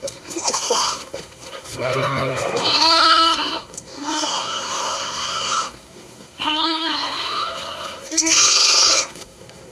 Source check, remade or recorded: remade